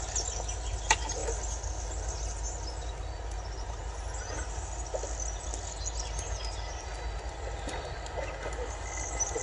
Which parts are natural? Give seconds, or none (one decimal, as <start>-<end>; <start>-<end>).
0.0-9.4